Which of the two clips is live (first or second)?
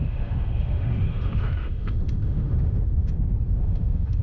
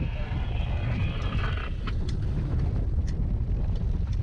second